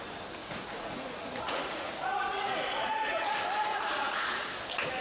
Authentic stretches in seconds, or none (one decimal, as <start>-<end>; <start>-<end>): 0.0-0.4; 3.3-3.7; 4.4-5.0